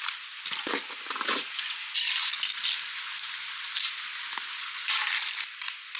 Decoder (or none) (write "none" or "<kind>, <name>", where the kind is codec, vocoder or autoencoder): none